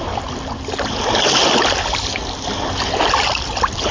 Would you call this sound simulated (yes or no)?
no